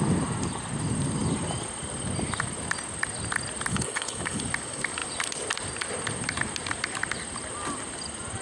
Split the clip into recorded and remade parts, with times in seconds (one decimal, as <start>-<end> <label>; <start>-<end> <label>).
0.0-3.7 recorded; 3.7-4.4 remade; 4.4-8.4 recorded